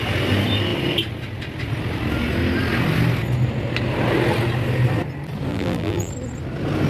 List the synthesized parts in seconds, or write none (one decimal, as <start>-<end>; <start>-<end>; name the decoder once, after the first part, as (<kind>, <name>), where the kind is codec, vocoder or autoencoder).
5.5-6.1 (vocoder, BigVGAN v2)